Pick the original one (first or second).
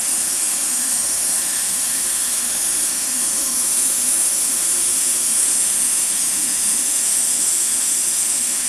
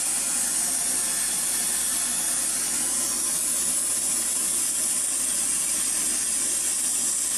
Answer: second